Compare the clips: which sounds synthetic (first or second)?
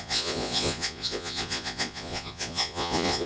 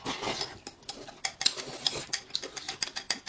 first